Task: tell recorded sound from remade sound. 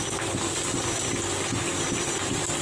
recorded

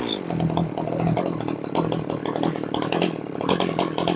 recorded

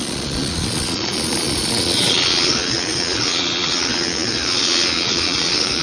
remade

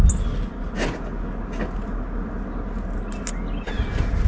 recorded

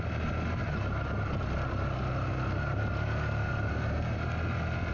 recorded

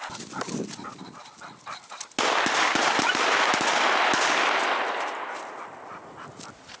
recorded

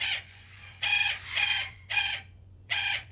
remade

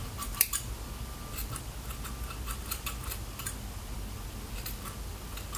recorded